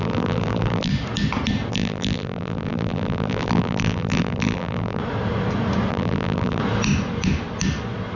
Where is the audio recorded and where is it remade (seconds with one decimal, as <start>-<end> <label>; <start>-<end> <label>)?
0.0-0.9 remade; 0.9-1.7 recorded; 1.7-5.0 remade; 5.0-5.9 recorded; 5.9-6.6 remade; 6.6-8.2 recorded